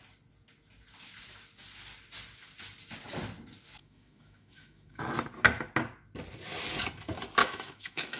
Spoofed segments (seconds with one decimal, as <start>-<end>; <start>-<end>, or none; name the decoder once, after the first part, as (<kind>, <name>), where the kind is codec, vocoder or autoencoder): 3.8-5.0 (autoencoder, DAC-VAE); 7.4-8.2